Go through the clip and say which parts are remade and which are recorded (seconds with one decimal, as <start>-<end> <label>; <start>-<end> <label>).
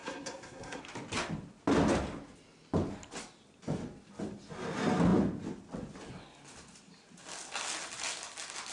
0.0-0.8 remade; 0.8-8.7 recorded